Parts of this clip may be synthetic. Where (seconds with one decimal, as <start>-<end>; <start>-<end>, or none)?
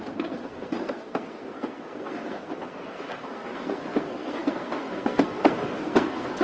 0.0-6.4